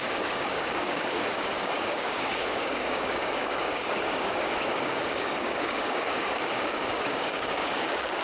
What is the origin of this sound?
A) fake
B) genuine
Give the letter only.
A